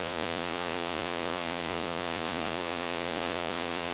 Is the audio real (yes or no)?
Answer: no